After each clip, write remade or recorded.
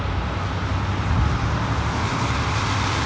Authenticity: recorded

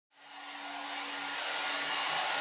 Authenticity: recorded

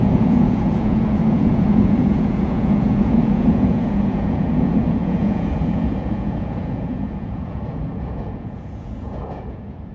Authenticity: remade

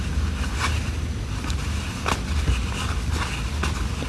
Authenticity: recorded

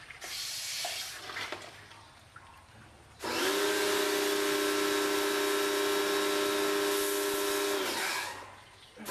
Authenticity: recorded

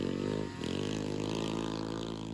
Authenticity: recorded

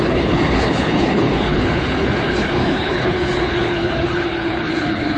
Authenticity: remade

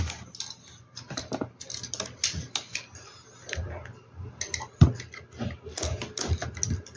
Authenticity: recorded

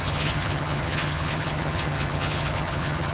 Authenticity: remade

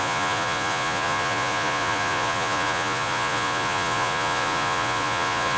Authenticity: remade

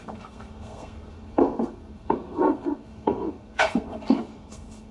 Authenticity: remade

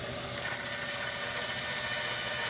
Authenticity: recorded